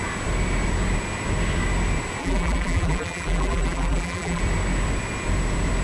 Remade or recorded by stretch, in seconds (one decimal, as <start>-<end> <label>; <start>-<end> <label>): 0.0-2.2 recorded; 2.2-4.4 remade; 4.4-5.8 recorded